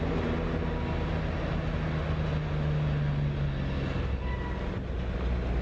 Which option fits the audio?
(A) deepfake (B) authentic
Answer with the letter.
B